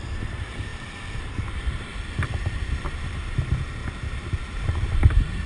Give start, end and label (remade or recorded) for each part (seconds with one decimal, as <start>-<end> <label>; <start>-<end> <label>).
0.0-1.9 remade; 1.9-3.1 recorded; 3.1-3.8 remade; 3.8-4.3 recorded; 4.3-5.5 remade